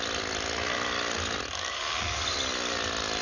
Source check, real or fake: real